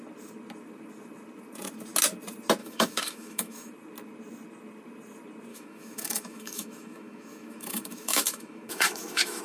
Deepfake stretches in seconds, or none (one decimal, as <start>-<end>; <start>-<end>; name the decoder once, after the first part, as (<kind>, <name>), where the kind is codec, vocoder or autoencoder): 2.6-3.7 (autoencoder, DAC-VAE); 5.5-9.4